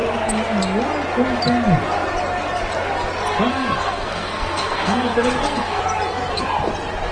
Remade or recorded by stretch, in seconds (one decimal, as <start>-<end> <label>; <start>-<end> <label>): 0.0-3.5 recorded; 3.5-5.8 remade; 5.8-7.1 recorded